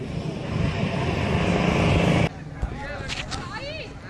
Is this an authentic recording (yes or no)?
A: yes